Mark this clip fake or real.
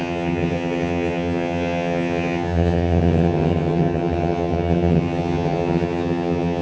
fake